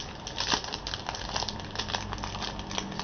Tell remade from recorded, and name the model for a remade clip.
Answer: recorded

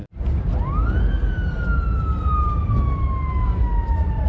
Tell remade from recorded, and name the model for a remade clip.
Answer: recorded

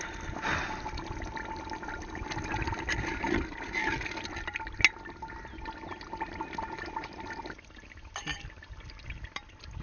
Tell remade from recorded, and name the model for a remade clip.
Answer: recorded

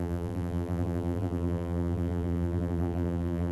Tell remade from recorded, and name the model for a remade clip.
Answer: remade, vocoder, BigVGAN v2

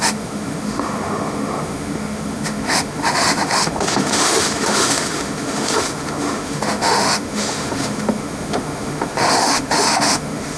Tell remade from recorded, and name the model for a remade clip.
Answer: remade, autoencoder, DAC-VAE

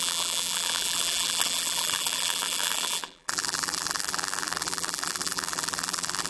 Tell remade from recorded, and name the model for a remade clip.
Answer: remade, vocoder, BigVGAN v2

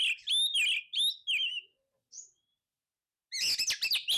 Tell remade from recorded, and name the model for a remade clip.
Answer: recorded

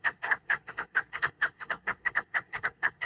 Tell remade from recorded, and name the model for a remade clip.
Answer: remade, codec, SNAC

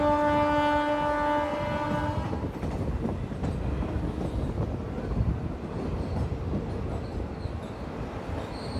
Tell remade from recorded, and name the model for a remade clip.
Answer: recorded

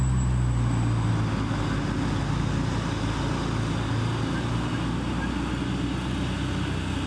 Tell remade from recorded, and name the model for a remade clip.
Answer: recorded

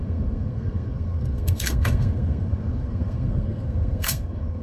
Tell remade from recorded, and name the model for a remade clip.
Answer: remade, codec, SNAC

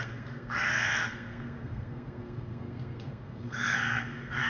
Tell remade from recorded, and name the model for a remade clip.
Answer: remade, codec, SNAC